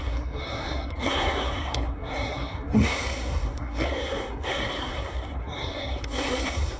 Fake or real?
fake